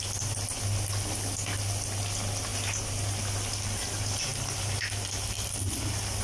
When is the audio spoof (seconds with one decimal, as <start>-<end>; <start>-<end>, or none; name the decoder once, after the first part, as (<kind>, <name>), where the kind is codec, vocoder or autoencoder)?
none